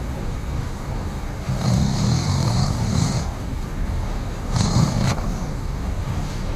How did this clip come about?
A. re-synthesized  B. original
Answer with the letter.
A